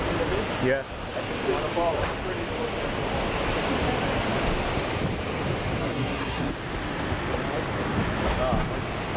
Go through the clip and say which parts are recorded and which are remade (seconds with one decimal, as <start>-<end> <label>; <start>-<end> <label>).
0.0-5.8 recorded; 5.8-6.5 remade; 6.5-9.2 recorded